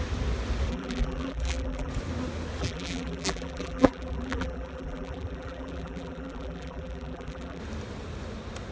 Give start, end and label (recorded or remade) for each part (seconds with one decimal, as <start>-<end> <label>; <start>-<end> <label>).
0.0-0.7 recorded; 0.7-1.9 remade; 1.9-2.6 recorded; 2.6-7.6 remade; 7.6-8.7 recorded